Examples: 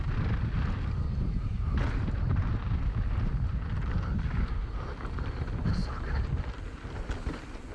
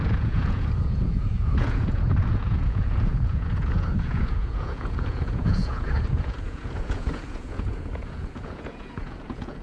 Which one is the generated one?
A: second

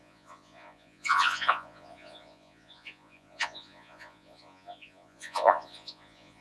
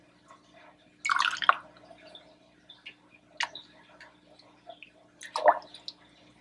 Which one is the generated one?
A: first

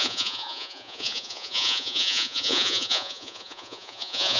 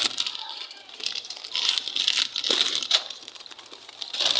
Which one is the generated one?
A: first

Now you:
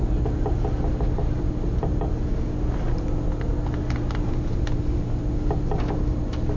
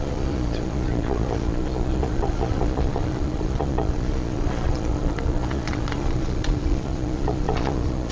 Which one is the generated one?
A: second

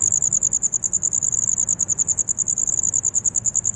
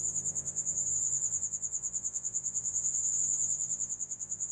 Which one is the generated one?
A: second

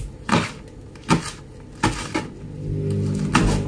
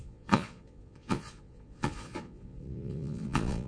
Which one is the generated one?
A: second